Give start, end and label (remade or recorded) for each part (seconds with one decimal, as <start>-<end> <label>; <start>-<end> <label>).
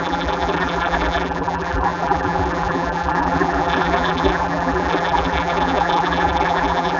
0.0-7.0 remade